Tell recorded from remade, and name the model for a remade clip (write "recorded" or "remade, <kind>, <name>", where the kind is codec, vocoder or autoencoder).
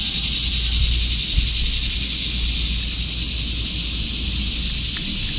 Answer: recorded